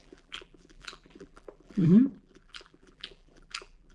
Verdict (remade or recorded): remade